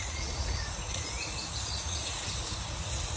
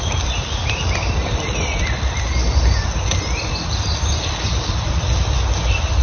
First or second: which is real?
second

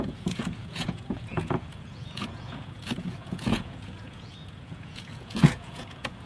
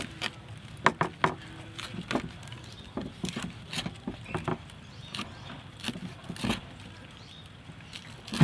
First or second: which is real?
second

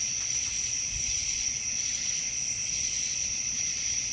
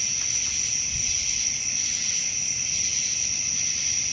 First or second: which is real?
second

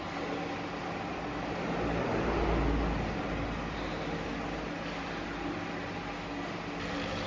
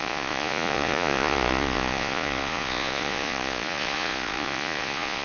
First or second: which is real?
first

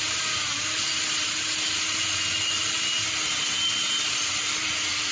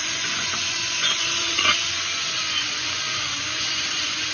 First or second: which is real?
first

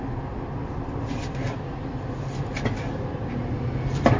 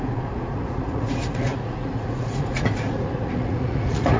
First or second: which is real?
first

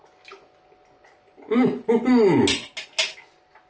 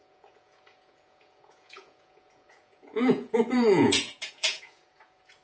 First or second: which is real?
first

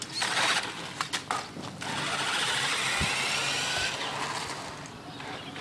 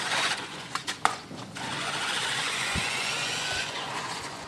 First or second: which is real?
first